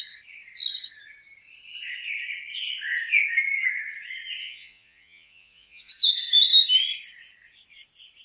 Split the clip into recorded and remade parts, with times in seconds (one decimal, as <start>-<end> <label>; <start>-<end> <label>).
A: 0.0-4.4 recorded; 4.4-5.9 remade; 5.9-8.2 recorded